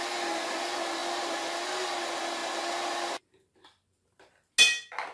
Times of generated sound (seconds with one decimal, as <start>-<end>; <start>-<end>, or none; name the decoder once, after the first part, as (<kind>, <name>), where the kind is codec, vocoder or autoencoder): none

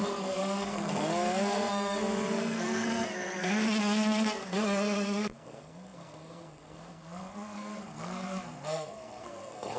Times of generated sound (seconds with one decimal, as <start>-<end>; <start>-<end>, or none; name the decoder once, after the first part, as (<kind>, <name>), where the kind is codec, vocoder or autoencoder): 0.0-9.8 (codec, SNAC)